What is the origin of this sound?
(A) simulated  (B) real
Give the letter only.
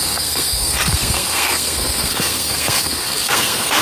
A